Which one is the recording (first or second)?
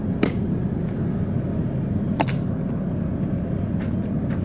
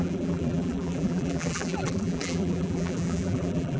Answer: first